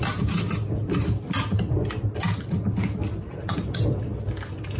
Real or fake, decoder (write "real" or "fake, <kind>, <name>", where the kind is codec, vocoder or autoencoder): real